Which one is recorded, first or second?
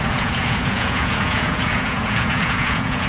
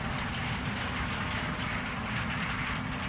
second